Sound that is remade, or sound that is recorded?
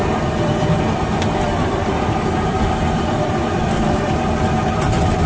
remade